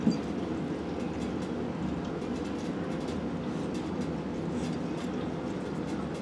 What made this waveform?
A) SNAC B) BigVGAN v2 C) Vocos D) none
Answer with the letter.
D